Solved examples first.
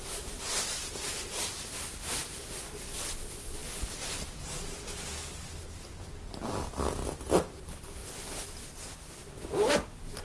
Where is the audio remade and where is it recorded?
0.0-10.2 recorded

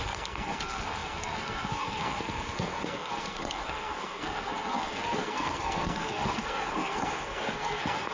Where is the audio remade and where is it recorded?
0.0-8.1 remade